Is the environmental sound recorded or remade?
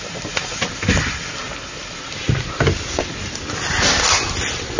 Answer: recorded